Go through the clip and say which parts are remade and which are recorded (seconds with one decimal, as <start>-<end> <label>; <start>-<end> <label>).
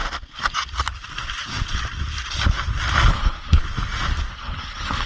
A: 0.0-3.1 recorded; 3.1-3.6 remade; 3.6-4.3 recorded; 4.3-5.1 remade